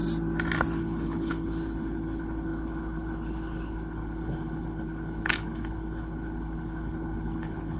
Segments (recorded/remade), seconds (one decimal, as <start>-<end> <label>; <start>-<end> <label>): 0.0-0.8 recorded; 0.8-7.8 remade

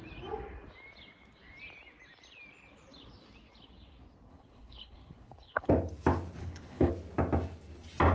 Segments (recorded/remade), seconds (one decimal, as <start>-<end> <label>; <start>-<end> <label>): 0.0-4.3 recorded; 4.3-5.7 remade; 5.7-6.4 recorded; 6.4-6.9 remade; 6.9-8.1 recorded

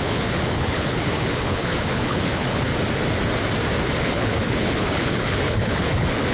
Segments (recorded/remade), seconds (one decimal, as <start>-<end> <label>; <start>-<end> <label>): 0.0-2.7 remade; 2.7-4.0 recorded; 4.0-6.3 remade

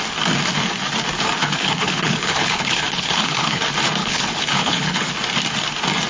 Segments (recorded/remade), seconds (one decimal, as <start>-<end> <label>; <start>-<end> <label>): 0.0-1.4 recorded; 1.4-3.6 remade; 3.6-4.0 recorded; 4.0-5.1 remade; 5.1-6.1 recorded